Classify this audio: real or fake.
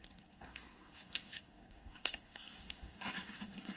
fake